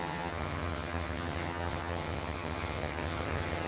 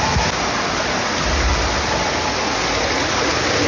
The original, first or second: second